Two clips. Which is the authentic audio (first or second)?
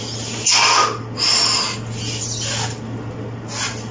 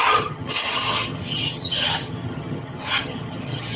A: first